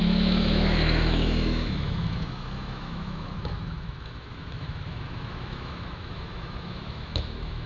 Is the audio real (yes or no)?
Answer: no